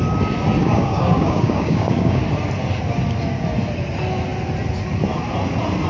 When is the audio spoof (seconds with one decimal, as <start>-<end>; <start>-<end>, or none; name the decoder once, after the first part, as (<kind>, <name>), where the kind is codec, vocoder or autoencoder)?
0.6-2.2 (codec, DAC)